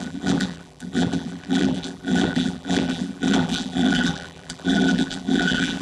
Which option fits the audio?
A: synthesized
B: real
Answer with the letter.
A